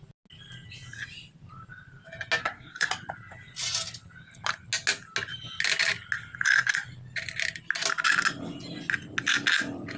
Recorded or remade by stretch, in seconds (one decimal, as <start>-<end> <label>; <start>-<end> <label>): 0.0-2.4 recorded; 2.4-2.9 remade; 2.9-10.0 recorded